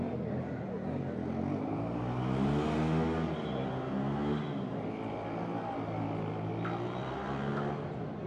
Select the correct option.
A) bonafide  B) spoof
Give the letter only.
A